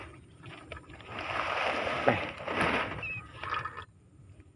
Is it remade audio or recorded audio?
recorded